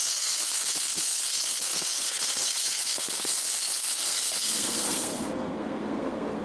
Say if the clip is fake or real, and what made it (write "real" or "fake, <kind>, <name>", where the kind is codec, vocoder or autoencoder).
fake, codec, SNAC